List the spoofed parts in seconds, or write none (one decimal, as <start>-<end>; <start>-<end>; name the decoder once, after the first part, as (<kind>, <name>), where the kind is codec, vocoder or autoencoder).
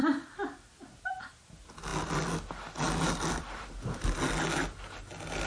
none